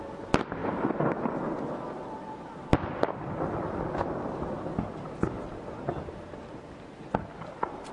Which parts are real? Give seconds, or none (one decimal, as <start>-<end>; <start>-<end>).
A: 0.0-7.9